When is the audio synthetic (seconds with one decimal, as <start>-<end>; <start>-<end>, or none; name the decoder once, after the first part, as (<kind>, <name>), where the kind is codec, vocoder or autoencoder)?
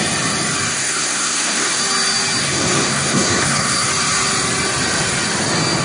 0.7-1.8 (codec, SNAC); 2.4-3.9